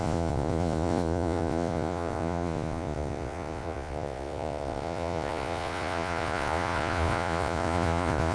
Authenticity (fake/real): fake